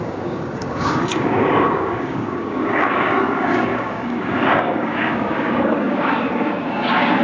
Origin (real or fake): fake